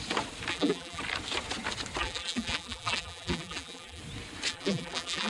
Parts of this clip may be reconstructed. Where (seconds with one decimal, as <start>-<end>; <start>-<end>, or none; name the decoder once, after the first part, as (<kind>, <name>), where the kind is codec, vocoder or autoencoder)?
0.5-1.0 (vocoder, BigVGAN v2); 2.0-4.0; 4.5-5.3